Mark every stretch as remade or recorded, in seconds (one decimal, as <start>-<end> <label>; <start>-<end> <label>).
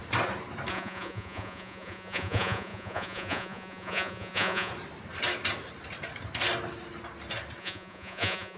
0.0-0.7 recorded; 0.7-4.7 remade; 4.7-7.6 recorded; 7.6-8.6 remade